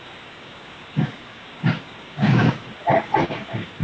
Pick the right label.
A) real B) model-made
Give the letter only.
B